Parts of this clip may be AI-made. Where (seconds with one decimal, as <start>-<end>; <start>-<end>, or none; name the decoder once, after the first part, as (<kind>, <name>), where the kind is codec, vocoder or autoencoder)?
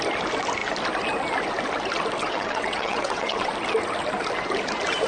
2.2-3.5 (vocoder, WaveNeXt)